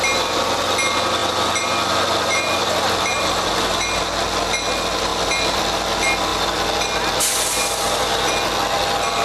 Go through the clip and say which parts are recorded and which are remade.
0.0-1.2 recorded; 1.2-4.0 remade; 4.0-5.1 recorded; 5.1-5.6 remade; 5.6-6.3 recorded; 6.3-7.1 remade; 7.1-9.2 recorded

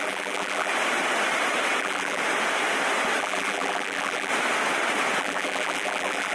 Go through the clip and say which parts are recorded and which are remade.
0.0-0.7 remade; 0.7-1.8 recorded; 1.8-2.2 remade; 2.2-3.2 recorded; 3.2-4.3 remade; 4.3-5.2 recorded; 5.2-6.3 remade